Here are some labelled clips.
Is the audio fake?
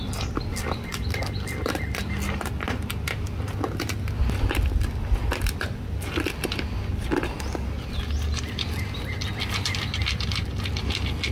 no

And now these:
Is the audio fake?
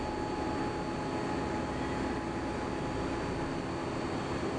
no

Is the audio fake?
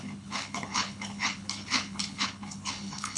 yes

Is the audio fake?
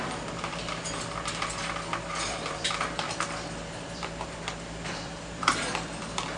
yes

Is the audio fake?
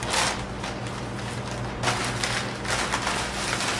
no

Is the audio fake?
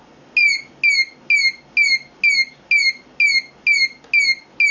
no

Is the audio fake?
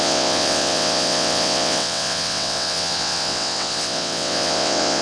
yes